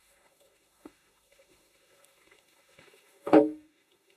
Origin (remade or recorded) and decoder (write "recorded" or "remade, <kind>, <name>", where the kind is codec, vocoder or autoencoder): remade, autoencoder, DAC-VAE